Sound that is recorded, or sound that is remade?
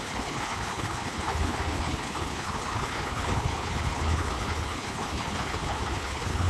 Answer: remade